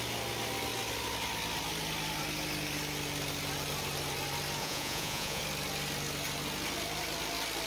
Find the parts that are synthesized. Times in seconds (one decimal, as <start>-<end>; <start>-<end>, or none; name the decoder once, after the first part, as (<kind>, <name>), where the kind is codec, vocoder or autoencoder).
4.6-5.4 (vocoder, Vocos)